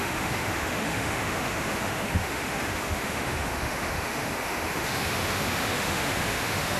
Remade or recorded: remade